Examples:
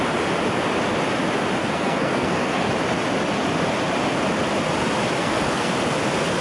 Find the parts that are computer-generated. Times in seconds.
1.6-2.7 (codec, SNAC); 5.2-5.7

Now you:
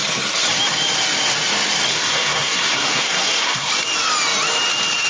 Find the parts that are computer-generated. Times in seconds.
1.9-3.7 (codec, SNAC)

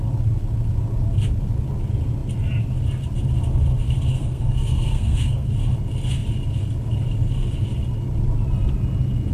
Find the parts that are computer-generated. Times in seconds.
4.1-5.5 (codec, SNAC)